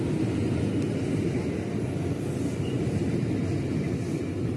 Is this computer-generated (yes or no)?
no